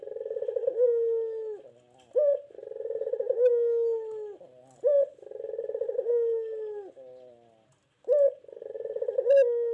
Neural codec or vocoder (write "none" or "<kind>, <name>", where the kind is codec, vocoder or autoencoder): none